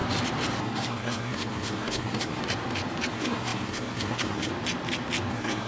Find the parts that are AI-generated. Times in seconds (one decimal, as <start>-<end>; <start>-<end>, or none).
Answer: 0.6-2.4; 3.1-4.5; 5.3-5.7